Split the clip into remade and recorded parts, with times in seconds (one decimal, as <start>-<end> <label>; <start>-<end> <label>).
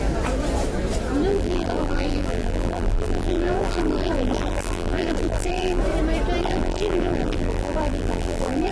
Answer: 0.0-1.3 recorded; 1.3-5.8 remade; 5.8-6.4 recorded; 6.4-8.7 remade